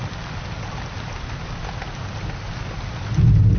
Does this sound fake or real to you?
real